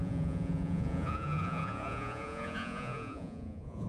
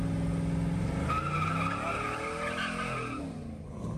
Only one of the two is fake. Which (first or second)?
first